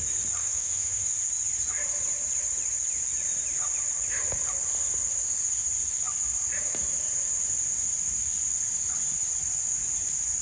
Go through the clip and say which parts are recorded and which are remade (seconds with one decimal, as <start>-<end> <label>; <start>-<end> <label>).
0.0-0.4 recorded; 0.4-1.1 remade; 1.1-10.4 recorded